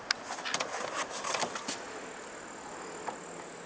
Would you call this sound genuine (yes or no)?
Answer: yes